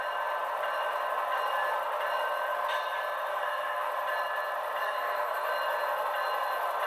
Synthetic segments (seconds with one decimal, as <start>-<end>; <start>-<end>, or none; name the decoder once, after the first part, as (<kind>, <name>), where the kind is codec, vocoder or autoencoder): 3.3-3.9 (codec, SNAC); 4.8-5.5

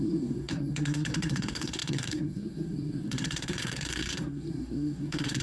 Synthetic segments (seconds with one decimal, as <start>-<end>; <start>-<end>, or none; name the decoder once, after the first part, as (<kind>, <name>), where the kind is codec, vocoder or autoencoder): 0.0-5.4 (codec, SNAC)

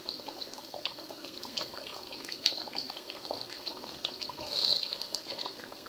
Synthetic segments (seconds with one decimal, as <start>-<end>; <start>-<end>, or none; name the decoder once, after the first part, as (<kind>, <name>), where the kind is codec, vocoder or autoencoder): 0.0-5.9 (codec, SNAC)

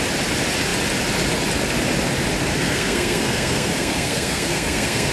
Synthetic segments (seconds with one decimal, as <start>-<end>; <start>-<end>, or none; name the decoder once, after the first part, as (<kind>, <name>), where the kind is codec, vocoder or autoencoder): 2.5-5.1 (codec, SNAC)

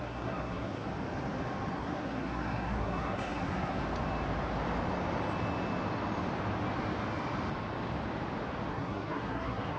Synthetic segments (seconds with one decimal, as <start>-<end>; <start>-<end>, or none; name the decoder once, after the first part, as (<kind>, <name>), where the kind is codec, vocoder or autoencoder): 0.0-0.9 (codec, SNAC); 1.7-3.8; 8.7-9.8

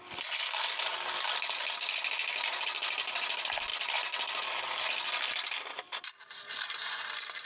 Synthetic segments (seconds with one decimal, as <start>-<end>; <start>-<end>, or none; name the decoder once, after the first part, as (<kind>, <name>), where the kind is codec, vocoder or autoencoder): none